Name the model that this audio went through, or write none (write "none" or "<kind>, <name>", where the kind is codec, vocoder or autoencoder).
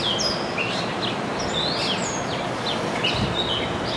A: none